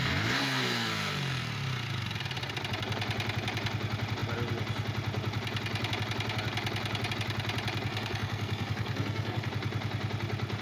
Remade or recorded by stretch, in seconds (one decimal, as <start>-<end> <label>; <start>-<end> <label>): 0.0-1.5 remade; 1.5-7.9 recorded; 7.9-9.5 remade; 9.5-10.6 recorded